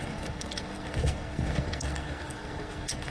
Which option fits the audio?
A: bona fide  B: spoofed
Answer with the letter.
B